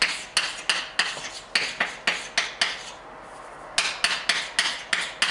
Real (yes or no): yes